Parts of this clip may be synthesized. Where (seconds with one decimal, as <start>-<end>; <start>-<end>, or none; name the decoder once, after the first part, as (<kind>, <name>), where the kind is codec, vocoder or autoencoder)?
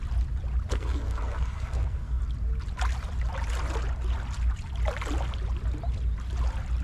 0.7-2.2 (codec, SNAC)